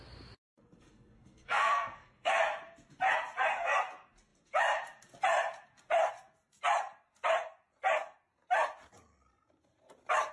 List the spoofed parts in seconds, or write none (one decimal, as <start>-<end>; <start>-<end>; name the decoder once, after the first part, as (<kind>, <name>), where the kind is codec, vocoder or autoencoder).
0.4-2.4 (codec, SNAC)